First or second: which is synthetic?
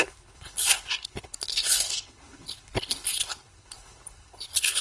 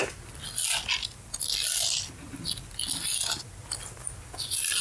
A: first